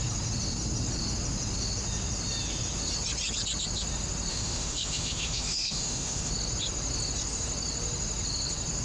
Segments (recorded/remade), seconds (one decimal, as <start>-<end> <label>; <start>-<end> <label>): 0.0-4.3 recorded; 4.3-6.3 remade; 6.3-8.8 recorded